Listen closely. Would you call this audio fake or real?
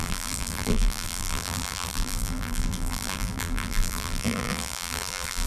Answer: fake